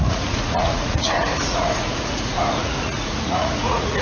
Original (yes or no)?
no